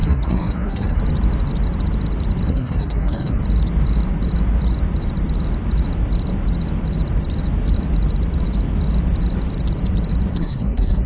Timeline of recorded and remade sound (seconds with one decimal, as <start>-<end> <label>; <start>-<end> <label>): 0.0-1.0 remade; 1.0-2.5 recorded; 2.5-3.4 remade; 3.4-10.3 recorded; 10.3-11.1 remade